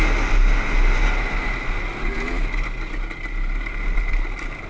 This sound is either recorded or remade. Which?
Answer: recorded